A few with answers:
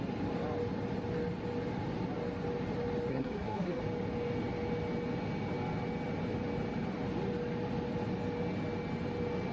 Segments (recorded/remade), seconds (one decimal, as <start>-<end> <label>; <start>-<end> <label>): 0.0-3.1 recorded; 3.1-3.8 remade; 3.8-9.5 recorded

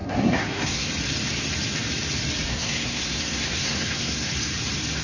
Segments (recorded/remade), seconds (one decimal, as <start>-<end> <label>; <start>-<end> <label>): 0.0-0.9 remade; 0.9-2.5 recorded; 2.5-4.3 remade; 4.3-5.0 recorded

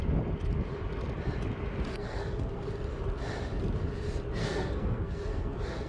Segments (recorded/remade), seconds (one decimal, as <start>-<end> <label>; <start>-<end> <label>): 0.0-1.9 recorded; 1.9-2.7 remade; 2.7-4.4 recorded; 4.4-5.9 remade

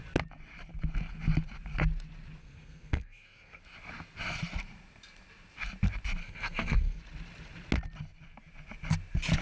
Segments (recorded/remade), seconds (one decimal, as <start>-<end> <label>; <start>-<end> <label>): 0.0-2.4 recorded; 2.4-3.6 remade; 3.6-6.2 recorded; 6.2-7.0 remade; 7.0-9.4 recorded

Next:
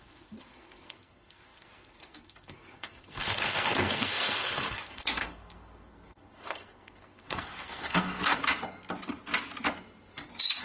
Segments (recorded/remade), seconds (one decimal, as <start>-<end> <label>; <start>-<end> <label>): 0.0-8.4 remade; 8.4-10.6 recorded